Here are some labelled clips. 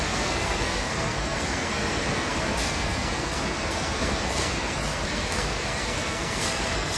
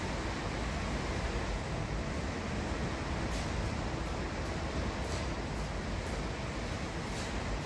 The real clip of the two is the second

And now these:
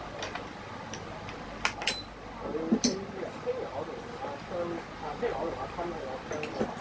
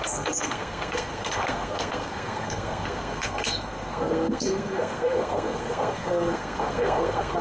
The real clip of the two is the first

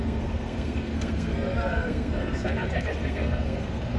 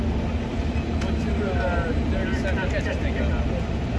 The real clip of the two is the second